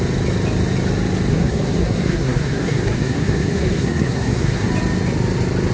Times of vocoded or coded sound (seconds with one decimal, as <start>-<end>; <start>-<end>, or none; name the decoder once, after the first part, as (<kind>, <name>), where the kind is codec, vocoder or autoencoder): 1.3-4.7 (codec, SNAC)